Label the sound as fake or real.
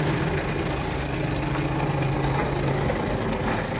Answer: real